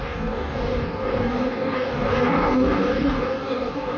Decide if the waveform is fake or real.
fake